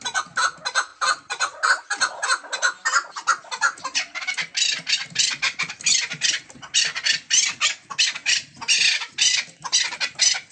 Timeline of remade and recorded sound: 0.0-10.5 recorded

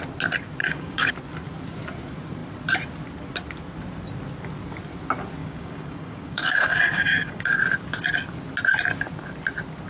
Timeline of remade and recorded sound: 0.0-0.6 recorded; 0.6-1.1 remade; 1.1-5.4 recorded; 5.4-7.6 remade; 7.6-9.9 recorded

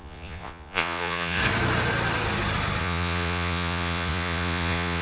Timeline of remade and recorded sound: 0.0-1.4 remade; 1.4-2.8 recorded; 2.8-5.0 remade

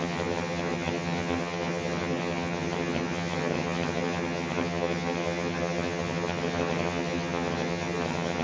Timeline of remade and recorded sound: 0.0-8.4 remade

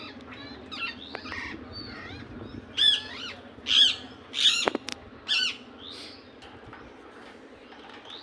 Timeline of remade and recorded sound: 0.0-8.2 recorded

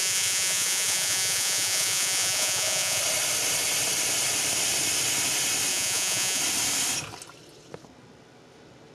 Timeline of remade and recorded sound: 0.0-3.0 remade; 3.0-5.7 recorded; 5.7-6.4 remade; 6.4-8.9 recorded